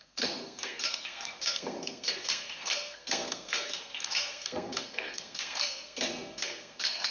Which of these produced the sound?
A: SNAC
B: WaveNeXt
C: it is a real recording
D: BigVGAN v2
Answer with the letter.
A